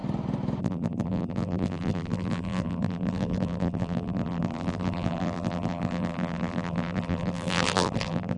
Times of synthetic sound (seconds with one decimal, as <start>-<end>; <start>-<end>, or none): 0.6-8.4